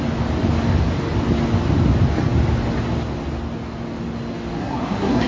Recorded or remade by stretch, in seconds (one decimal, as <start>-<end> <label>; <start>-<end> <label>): 0.0-4.6 recorded; 4.6-5.3 remade